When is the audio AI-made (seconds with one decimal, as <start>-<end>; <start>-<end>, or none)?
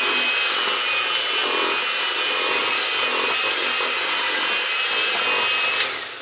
none